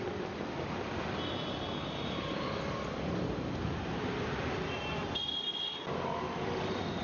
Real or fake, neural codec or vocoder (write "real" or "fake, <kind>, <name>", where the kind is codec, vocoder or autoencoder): real